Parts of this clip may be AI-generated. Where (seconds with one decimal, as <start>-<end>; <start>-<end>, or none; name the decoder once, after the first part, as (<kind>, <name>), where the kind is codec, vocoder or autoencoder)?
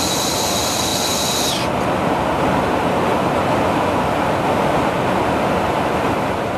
none